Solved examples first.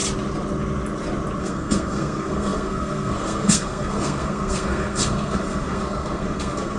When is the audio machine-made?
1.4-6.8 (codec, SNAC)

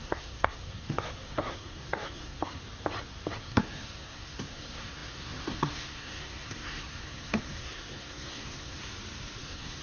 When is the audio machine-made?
0.0-2.6 (codec, SNAC); 3.4-8.8; 9.4-9.8

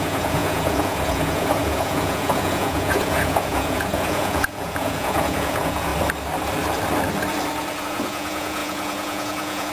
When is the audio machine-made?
0.0-5.9 (vocoder, Vocos); 7.8-9.7

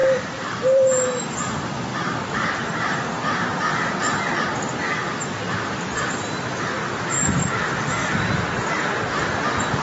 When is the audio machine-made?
0.0-1.2 (vocoder, BigVGAN v2); 1.9-4.2; 6.8-7.5